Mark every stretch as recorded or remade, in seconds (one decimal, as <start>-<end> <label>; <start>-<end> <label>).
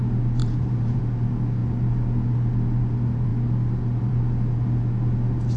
0.0-0.4 recorded; 0.4-1.0 remade; 1.0-5.6 recorded